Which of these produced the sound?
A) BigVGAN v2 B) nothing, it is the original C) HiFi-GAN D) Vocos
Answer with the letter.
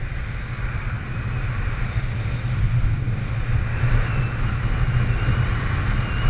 B